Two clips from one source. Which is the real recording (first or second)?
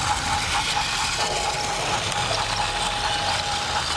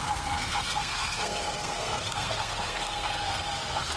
first